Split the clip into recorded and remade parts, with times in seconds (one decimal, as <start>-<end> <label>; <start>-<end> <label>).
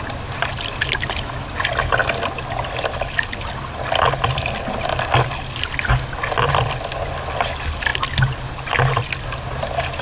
0.0-10.0 recorded